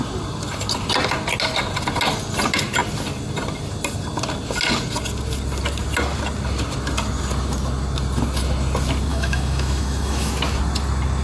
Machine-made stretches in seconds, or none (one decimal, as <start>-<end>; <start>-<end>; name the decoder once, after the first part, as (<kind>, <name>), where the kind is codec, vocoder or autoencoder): 9.1-10.3 (autoencoder, DAC-VAE)